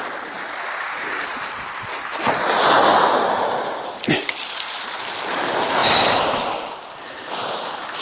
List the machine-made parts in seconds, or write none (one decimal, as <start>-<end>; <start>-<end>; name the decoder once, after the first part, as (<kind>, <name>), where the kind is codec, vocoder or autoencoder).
none